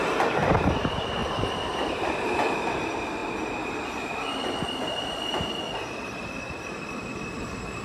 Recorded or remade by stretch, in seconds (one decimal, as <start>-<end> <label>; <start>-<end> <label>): 0.0-3.2 remade; 3.2-5.4 recorded; 5.4-7.8 remade